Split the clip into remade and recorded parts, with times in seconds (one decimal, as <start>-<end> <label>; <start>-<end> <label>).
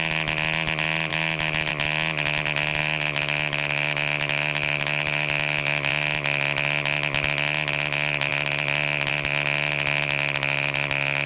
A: 0.0-1.1 recorded; 1.1-1.7 remade; 1.7-2.8 recorded; 2.8-5.9 remade; 5.9-11.3 recorded